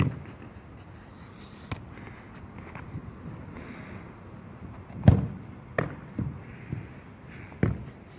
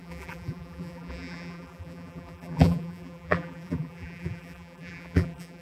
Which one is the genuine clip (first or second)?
first